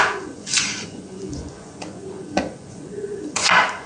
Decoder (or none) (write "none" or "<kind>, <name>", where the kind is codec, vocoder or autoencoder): vocoder, Vocos